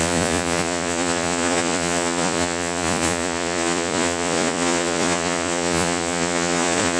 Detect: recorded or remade remade